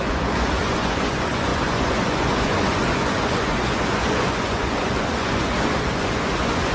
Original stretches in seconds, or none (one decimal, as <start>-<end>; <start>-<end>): none

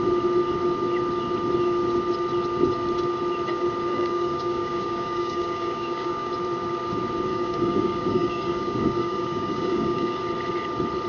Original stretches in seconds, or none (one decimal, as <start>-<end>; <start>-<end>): 0.0-3.9; 6.3-7.3; 10.2-11.1

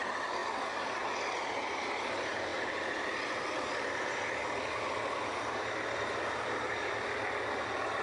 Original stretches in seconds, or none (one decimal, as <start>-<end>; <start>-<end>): 0.0-8.0

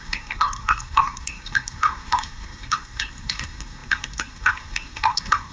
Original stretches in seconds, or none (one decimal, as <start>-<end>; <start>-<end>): none

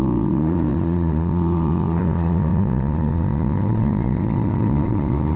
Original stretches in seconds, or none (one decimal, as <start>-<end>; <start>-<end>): none

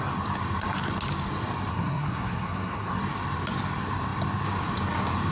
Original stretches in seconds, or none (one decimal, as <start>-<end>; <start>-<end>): 0.0-1.7; 3.0-5.3